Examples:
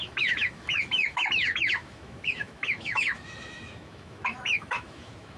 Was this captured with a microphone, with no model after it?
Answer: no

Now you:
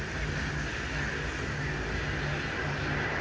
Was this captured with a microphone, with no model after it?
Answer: yes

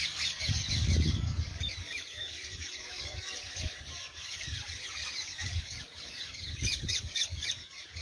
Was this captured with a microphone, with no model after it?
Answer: no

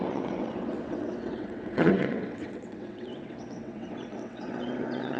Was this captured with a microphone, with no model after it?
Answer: no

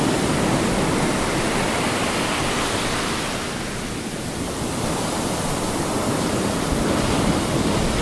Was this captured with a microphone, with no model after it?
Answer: yes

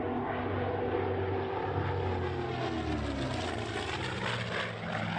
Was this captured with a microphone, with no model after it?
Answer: yes